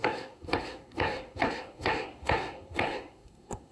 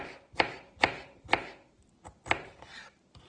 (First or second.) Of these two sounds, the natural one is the second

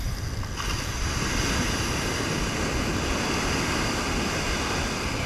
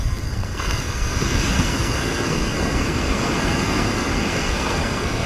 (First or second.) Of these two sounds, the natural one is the first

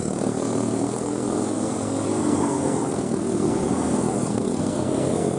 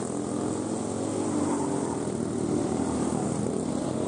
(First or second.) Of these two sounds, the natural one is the second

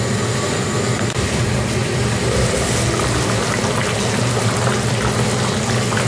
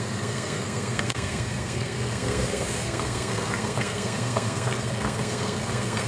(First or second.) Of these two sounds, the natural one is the first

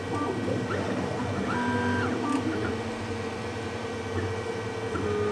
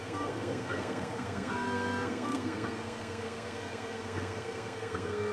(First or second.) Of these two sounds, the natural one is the first